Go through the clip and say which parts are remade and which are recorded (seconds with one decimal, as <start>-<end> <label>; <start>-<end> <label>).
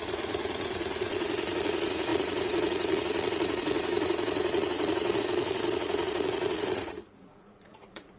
0.0-8.2 remade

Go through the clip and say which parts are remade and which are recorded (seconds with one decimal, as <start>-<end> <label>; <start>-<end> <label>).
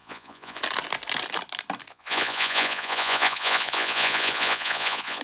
0.0-0.6 remade; 0.6-1.9 recorded; 1.9-5.2 remade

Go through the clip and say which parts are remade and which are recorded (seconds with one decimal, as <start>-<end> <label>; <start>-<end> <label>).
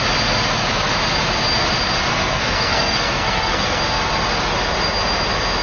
0.0-2.1 recorded; 2.1-3.8 remade; 3.8-5.6 recorded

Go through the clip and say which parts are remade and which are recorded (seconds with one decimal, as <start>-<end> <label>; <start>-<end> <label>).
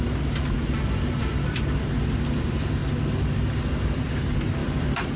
0.0-1.2 recorded; 1.2-1.8 remade; 1.8-4.6 recorded; 4.6-5.2 remade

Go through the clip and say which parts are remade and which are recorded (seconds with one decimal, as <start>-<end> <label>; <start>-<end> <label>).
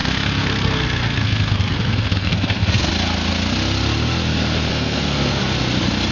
0.0-2.9 remade; 2.9-4.7 recorded; 4.7-5.4 remade; 5.4-6.1 recorded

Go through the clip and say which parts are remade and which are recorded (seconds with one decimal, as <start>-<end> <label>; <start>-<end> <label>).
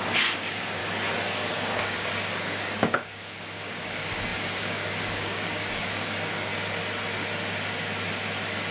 0.0-0.8 remade; 0.8-1.5 recorded; 1.5-6.5 remade; 6.5-8.7 recorded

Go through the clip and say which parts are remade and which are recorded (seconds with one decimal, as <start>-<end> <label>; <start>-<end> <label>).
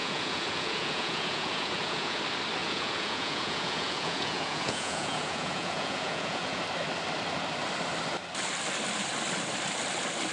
0.0-2.2 remade; 2.2-2.6 recorded; 2.6-6.6 remade; 6.6-10.3 recorded